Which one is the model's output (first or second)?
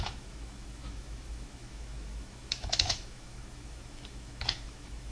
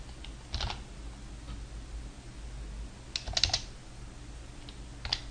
first